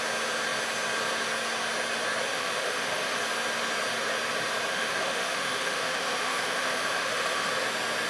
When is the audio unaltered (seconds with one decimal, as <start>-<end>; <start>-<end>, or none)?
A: 0.0-2.3; 3.2-4.7; 7.5-8.1

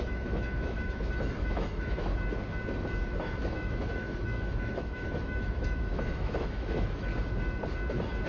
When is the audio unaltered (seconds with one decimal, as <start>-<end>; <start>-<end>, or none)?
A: 2.1-3.2; 7.1-8.3

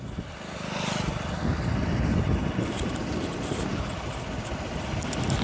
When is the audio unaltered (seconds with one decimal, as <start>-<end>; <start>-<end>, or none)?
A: 0.0-5.4

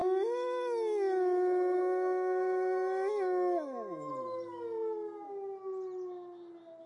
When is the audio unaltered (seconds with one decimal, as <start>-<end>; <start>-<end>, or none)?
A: 4.1-6.9

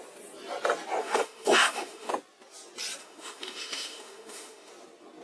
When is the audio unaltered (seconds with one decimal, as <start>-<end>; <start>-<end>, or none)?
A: 0.0-1.0; 2.1-3.0; 4.7-5.2

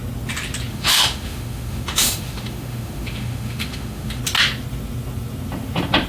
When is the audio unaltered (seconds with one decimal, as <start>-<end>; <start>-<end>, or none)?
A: 0.0-0.7; 4.2-6.1

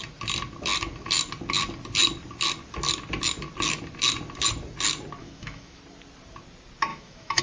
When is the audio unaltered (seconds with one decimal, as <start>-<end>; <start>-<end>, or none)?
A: 0.0-5.2; 5.8-6.9